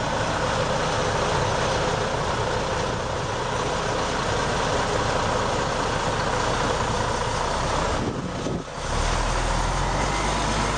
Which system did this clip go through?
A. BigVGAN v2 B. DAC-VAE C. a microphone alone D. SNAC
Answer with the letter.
C